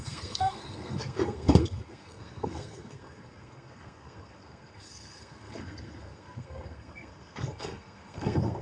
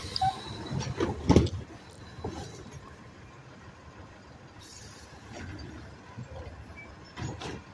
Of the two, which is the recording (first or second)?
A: second